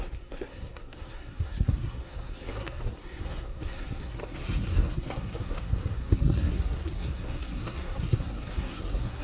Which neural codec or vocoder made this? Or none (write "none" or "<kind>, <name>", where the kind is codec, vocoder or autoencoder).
codec, SNAC